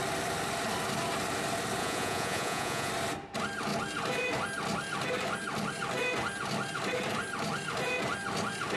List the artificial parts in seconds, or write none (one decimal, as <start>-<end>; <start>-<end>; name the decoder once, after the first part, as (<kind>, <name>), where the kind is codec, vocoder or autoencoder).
1.8-2.9 (vocoder, Vocos)